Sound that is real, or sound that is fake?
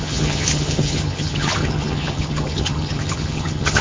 fake